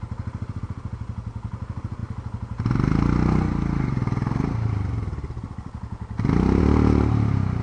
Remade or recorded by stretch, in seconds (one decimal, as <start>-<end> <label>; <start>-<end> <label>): 0.0-7.6 recorded